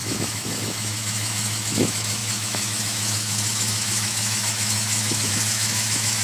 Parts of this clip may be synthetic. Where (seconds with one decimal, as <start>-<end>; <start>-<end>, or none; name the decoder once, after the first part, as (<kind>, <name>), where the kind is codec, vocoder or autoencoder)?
0.0-6.2 (autoencoder, DAC-VAE)